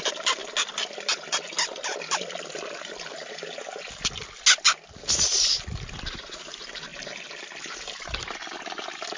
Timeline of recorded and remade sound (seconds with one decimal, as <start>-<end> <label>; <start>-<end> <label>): 0.0-9.2 recorded